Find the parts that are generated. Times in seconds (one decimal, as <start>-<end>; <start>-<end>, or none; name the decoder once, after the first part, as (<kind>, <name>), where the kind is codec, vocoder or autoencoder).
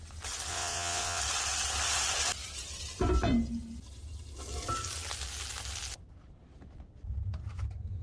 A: 0.5-1.2 (vocoder, WaveNeXt)